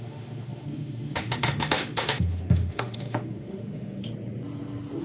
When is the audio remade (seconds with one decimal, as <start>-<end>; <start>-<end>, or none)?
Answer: 0.0-4.0